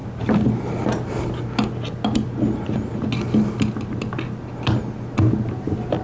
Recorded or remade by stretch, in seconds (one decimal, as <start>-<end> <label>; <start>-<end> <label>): 0.0-6.0 recorded